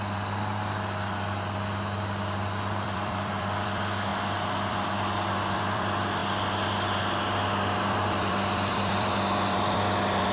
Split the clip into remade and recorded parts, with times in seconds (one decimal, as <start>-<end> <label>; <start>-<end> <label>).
0.0-4.1 remade; 4.1-4.7 recorded; 4.7-6.2 remade; 6.2-7.8 recorded; 7.8-10.3 remade